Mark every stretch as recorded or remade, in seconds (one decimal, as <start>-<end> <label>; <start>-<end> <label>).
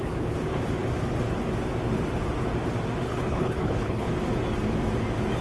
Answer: 0.0-3.0 recorded; 3.0-4.1 remade; 4.1-5.4 recorded